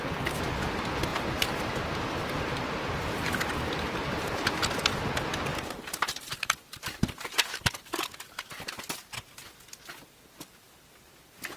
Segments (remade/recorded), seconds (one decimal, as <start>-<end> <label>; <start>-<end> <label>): 0.0-1.1 recorded; 1.1-3.5 remade; 3.5-5.5 recorded; 5.5-7.7 remade; 7.7-11.6 recorded